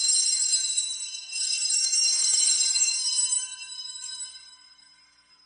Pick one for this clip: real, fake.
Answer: fake